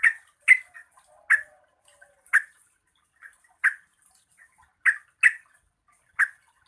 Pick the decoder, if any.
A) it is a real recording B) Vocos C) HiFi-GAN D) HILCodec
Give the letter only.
A